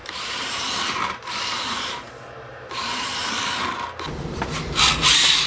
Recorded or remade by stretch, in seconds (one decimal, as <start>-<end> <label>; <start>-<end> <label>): 0.0-3.3 remade; 3.3-5.5 recorded